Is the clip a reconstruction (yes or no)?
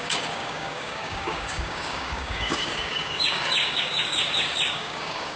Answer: yes